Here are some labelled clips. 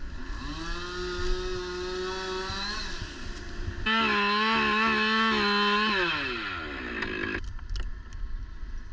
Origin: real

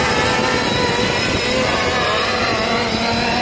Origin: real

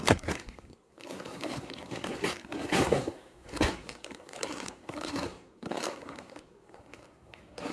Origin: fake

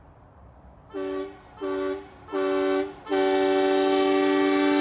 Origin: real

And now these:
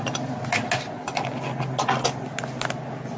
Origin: real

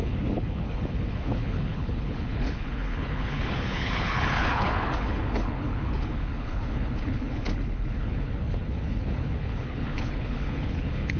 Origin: fake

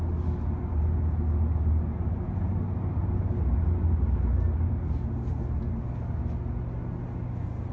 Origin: real